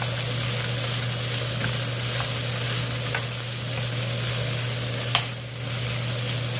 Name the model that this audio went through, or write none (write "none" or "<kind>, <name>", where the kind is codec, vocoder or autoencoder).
none